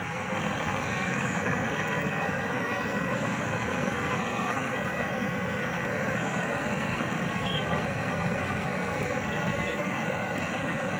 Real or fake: fake